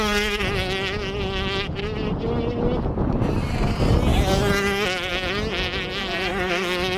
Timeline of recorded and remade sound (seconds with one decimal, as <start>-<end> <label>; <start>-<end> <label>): 0.0-7.0 recorded